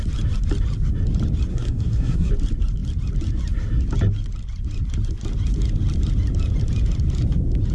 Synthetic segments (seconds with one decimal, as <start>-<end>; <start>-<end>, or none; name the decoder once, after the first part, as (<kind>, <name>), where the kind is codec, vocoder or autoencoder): 1.5-2.3 (codec, SNAC)